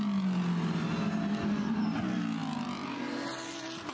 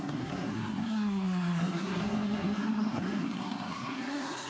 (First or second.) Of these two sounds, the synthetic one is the second